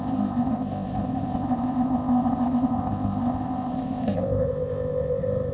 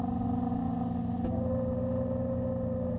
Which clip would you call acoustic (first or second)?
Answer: second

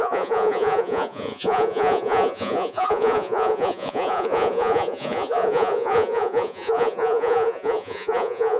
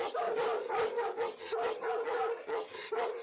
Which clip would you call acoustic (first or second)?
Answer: second